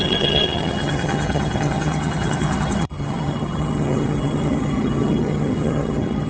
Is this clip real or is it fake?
fake